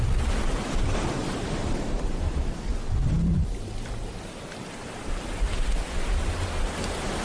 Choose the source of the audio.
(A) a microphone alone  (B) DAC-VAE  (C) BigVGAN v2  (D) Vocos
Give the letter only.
A